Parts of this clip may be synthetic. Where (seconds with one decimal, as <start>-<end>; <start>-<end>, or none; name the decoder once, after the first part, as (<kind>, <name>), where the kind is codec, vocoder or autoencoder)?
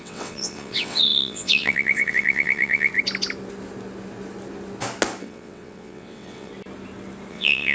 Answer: 0.0-2.9 (vocoder, WaveNeXt); 5.2-6.5; 7.3-7.7